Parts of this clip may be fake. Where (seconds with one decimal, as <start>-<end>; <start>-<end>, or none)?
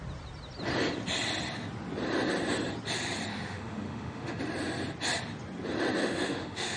3.3-4.4; 6.0-6.8